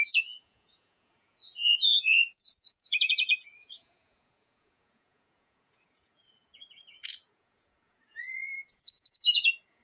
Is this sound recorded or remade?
remade